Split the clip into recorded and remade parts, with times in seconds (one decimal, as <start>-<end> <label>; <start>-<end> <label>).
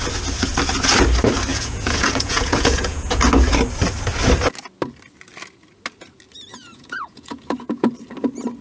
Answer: 0.0-1.5 recorded; 1.5-3.2 remade; 3.2-6.5 recorded; 6.5-7.9 remade; 7.9-8.6 recorded